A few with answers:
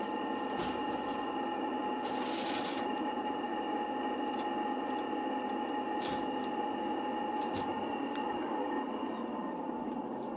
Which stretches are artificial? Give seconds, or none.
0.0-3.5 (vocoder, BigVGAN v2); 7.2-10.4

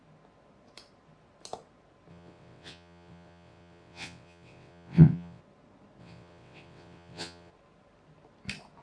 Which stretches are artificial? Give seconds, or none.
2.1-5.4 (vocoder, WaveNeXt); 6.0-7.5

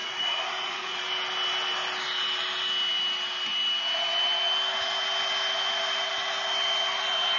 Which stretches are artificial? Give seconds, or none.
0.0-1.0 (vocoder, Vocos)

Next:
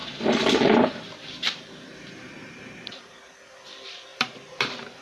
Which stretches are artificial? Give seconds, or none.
0.0-3.0 (vocoder, BigVGAN v2); 4.1-5.0

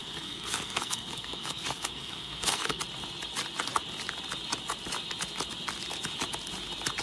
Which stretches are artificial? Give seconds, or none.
0.0-2.8 (codec, SNAC)

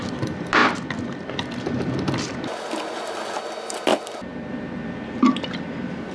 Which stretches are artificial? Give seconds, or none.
3.9-4.5 (vocoder, BigVGAN v2)

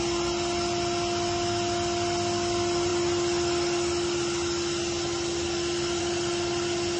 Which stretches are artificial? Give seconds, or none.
none

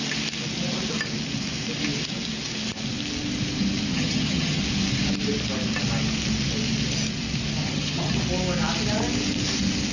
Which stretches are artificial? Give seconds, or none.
3.9-4.6 (vocoder, HiFi-GAN); 7.6-8.1